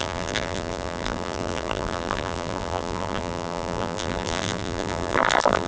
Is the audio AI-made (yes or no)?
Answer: yes